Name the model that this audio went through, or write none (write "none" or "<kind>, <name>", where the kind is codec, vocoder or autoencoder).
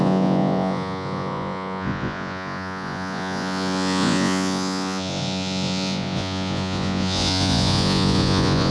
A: vocoder, Vocos